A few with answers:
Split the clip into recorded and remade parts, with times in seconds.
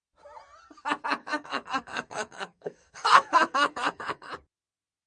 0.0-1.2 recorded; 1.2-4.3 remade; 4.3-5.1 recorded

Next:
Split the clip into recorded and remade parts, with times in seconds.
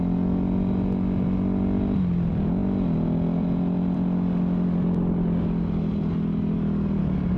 0.0-7.4 recorded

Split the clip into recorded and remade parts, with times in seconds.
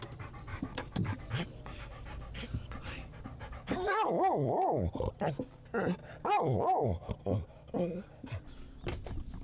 0.0-0.5 recorded; 0.5-1.3 remade; 1.3-3.3 recorded; 3.3-4.9 remade; 4.9-6.0 recorded; 6.0-7.1 remade; 7.1-9.4 recorded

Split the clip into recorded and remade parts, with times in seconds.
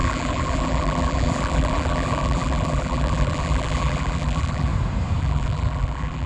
0.0-4.7 remade; 4.7-5.2 recorded; 5.2-6.3 remade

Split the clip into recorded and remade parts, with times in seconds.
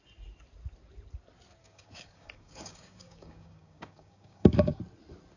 0.0-1.6 recorded; 1.6-4.8 remade; 4.8-5.4 recorded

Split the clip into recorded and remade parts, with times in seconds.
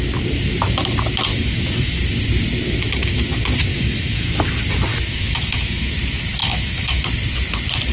0.0-1.3 recorded; 1.3-2.0 remade; 2.0-3.7 recorded; 3.7-4.4 remade; 4.4-4.9 recorded; 4.9-5.9 remade; 5.9-6.4 recorded; 6.4-7.0 remade; 7.0-7.9 recorded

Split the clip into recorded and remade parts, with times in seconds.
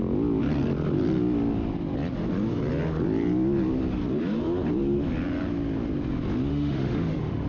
0.0-6.5 recorded; 6.5-7.5 remade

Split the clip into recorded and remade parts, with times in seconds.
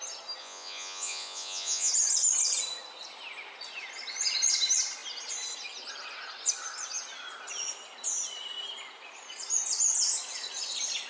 0.0-0.4 recorded; 0.4-1.9 remade; 1.9-11.1 recorded